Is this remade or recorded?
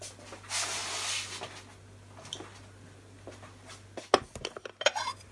recorded